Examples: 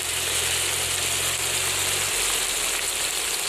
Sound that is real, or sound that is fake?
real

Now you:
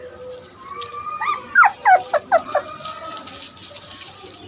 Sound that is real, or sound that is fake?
real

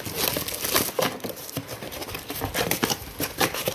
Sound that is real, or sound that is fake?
real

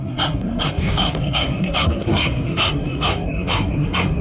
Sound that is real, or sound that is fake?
fake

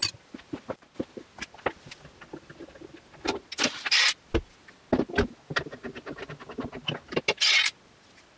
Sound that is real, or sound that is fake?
real